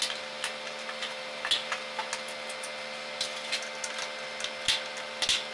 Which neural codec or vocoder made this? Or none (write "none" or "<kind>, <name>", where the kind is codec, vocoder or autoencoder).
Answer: none